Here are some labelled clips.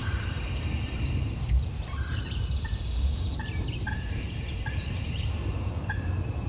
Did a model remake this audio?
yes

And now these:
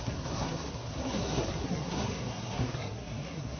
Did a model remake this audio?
yes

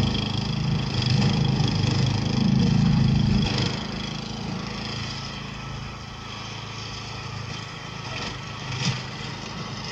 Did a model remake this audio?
no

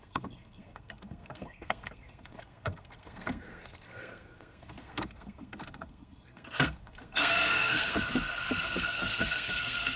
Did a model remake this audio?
yes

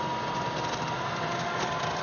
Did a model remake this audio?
no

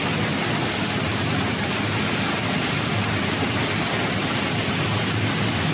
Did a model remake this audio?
no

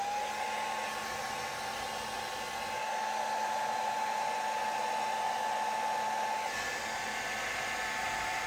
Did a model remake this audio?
no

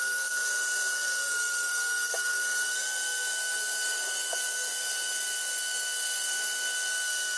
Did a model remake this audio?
yes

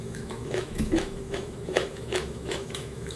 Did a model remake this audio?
yes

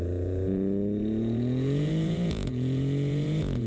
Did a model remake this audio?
yes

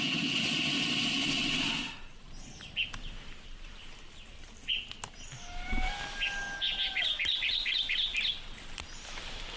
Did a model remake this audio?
no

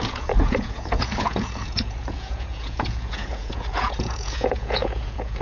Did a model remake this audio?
yes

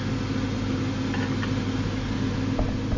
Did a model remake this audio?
no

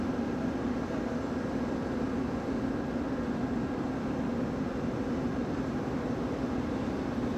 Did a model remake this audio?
no